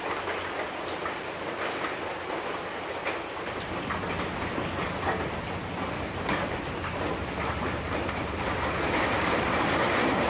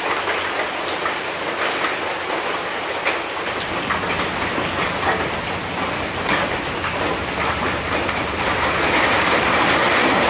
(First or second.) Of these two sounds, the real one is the second